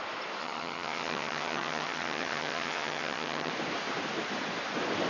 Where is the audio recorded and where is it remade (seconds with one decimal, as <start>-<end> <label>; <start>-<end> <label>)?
0.0-0.4 recorded; 0.4-3.5 remade; 3.5-5.1 recorded